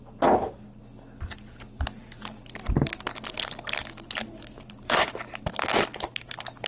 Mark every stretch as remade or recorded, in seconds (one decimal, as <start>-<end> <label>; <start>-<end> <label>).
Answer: 0.0-4.2 recorded; 4.2-5.7 remade; 5.7-6.7 recorded